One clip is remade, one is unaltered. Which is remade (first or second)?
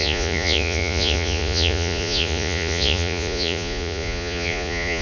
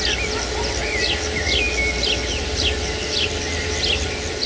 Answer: first